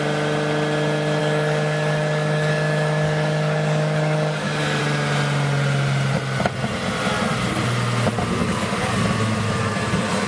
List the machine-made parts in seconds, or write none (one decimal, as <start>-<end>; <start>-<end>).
1.2-4.8; 8.4-8.9